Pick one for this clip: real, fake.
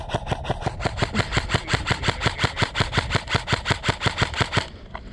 real